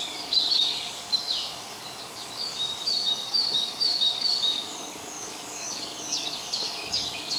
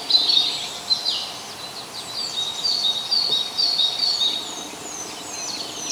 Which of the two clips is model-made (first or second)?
first